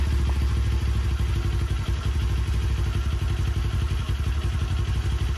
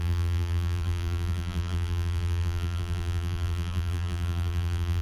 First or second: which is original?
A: first